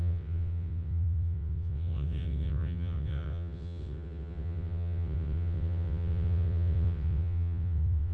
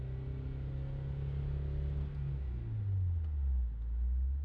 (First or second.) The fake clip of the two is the first